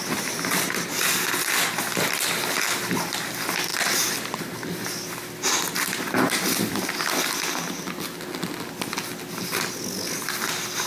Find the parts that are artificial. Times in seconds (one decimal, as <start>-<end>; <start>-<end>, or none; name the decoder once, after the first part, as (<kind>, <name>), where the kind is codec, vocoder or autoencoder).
none